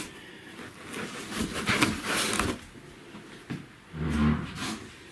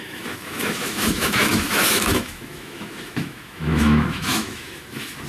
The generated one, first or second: second